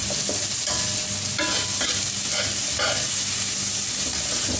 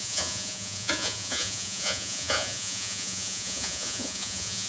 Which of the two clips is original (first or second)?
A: first